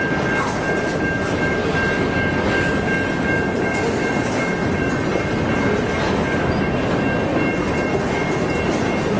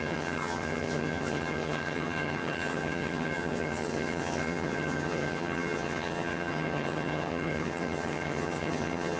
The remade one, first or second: second